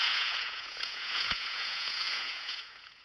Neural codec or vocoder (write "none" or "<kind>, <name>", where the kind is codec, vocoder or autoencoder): vocoder, Vocos